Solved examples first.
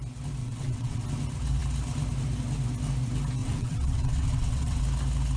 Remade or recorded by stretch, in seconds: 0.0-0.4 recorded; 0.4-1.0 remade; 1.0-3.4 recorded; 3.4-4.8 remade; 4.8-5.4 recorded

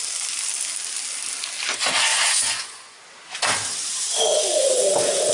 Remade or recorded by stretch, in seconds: 0.0-2.1 recorded; 2.1-3.1 remade; 3.1-5.3 recorded

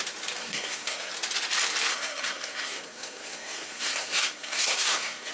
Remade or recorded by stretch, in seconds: 0.0-0.4 recorded; 0.4-1.1 remade; 1.1-1.9 recorded; 1.9-5.3 remade

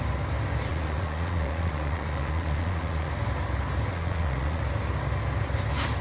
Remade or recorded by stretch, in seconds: 0.0-0.7 recorded; 0.7-3.1 remade; 3.1-3.9 recorded; 3.9-4.6 remade; 4.6-6.0 recorded

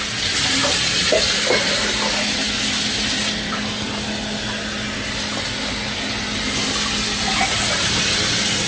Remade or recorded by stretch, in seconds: 0.0-0.6 recorded; 0.6-1.2 remade; 1.2-7.3 recorded; 7.3-8.7 remade